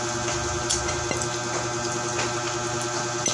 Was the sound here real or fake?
real